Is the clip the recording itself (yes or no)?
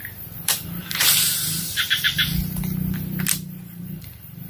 no